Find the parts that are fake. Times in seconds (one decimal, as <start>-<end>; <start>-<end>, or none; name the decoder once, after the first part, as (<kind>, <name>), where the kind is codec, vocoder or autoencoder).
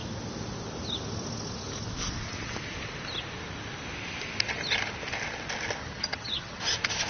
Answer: 5.8-6.6 (vocoder, HiFi-GAN)